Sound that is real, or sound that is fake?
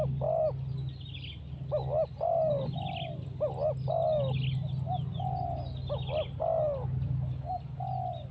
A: real